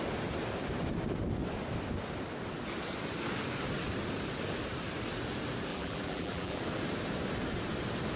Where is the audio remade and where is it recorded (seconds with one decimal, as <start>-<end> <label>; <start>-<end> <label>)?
0.0-5.7 recorded; 5.7-6.6 remade; 6.6-8.2 recorded